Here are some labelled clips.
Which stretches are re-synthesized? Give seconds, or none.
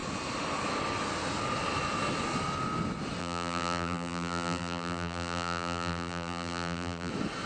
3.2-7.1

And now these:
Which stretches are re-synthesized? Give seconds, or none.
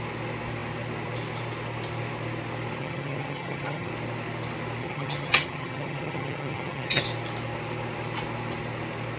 2.8-3.9; 4.8-7.0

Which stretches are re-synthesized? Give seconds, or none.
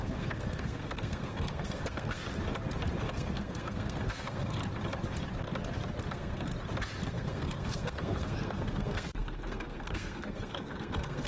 0.0-2.2; 3.0-4.6; 6.1-6.5; 7.1-11.3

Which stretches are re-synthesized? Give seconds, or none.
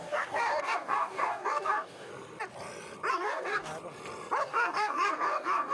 0.0-2.1; 3.1-3.7; 4.4-5.7